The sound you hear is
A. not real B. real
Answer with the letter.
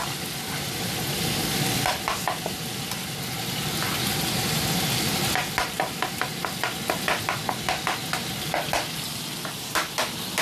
B